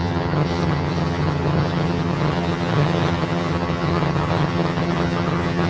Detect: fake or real fake